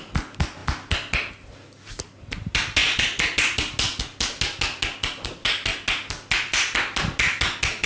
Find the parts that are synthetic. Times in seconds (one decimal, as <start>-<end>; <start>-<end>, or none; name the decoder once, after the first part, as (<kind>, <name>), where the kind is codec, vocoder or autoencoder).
none